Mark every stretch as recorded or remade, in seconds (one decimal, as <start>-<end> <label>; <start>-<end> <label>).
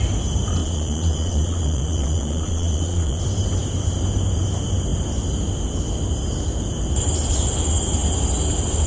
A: 0.0-0.6 recorded; 0.6-3.2 remade; 3.2-8.9 recorded